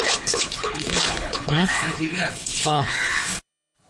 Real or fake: fake